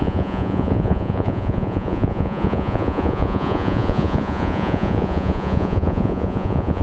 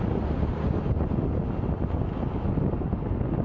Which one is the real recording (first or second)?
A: second